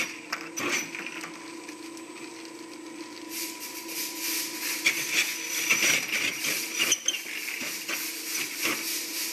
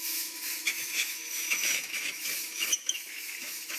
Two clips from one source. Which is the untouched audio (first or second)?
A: first